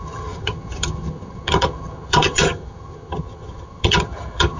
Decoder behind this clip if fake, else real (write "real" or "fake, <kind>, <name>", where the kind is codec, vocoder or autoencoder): fake, vocoder, HiFi-GAN